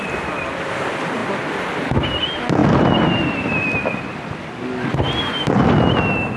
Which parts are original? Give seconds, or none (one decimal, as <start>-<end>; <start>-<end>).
0.0-6.4